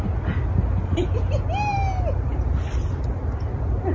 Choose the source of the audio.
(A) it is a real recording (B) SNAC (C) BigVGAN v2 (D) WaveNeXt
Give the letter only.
A